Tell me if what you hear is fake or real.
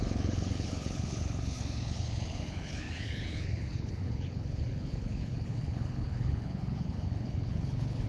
fake